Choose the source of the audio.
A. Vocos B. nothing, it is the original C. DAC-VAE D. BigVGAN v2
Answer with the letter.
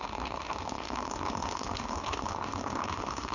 C